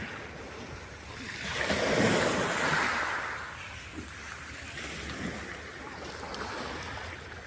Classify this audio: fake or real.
real